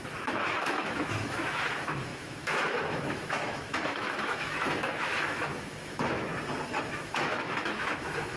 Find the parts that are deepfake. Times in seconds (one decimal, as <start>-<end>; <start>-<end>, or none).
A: 0.0-6.3; 6.9-8.4